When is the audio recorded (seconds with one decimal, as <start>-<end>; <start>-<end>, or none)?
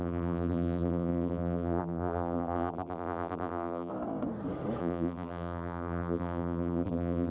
3.9-4.8